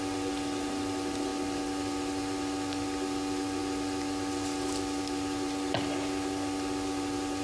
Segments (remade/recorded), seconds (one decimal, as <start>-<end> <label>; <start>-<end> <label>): 0.0-7.4 recorded